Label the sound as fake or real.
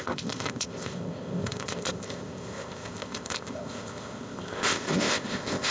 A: fake